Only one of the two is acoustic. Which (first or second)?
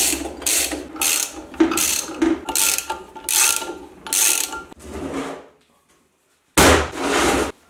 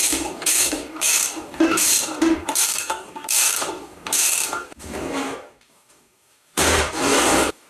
first